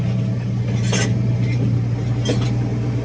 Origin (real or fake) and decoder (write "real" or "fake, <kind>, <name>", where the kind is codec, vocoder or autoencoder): real